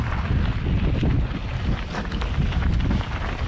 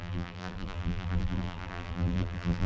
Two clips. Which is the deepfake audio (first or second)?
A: second